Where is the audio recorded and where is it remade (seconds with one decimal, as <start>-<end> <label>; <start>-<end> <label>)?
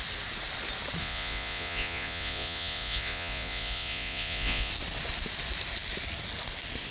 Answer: 0.0-1.0 recorded; 1.0-4.7 remade; 4.7-6.9 recorded